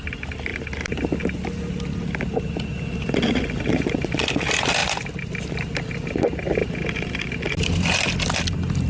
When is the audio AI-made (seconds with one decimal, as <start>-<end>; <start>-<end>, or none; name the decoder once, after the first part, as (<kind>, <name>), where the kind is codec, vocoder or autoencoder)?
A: 6.6-8.0 (vocoder, BigVGAN v2)